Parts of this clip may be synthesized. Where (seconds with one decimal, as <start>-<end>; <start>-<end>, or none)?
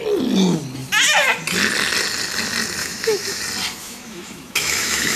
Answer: 2.8-3.4; 3.8-5.2